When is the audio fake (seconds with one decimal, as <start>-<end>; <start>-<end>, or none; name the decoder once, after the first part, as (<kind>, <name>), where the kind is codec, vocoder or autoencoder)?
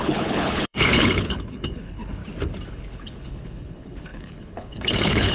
0.0-2.2 (codec, HILCodec); 2.7-5.3